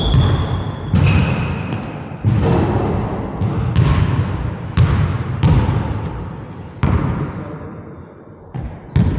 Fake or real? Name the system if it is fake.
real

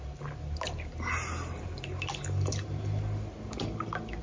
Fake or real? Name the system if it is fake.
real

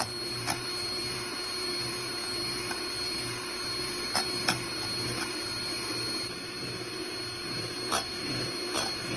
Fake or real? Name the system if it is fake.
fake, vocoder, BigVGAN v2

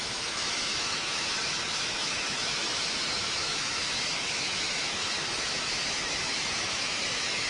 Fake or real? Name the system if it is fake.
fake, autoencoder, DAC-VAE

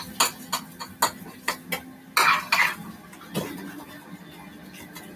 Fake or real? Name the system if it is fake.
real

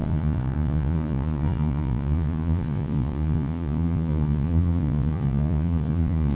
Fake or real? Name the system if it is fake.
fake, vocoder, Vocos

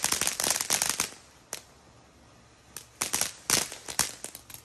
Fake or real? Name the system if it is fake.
real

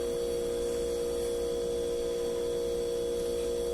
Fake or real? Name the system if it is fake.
real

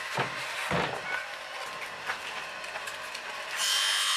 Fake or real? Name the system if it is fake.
real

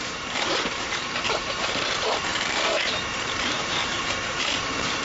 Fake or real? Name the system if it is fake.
fake, vocoder, BigVGAN v2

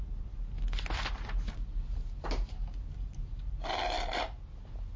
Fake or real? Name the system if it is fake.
real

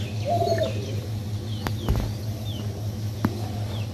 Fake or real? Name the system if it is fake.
real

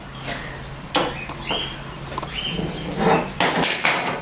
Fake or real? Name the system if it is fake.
real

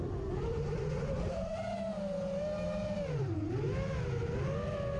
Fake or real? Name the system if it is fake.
real